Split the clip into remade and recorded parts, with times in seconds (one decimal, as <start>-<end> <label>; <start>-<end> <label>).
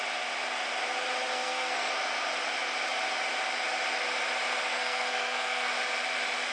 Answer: 0.0-1.3 recorded; 1.3-1.9 remade; 1.9-4.7 recorded; 4.7-5.7 remade; 5.7-6.5 recorded